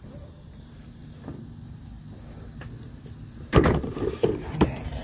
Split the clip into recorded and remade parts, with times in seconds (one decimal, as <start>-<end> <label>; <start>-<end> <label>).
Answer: 0.0-1.0 remade; 1.0-3.3 recorded; 3.3-4.2 remade; 4.2-5.0 recorded

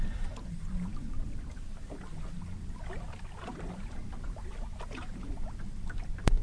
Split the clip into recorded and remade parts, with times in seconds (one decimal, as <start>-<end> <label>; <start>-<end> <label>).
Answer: 0.0-6.4 recorded